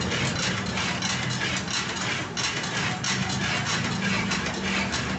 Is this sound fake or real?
real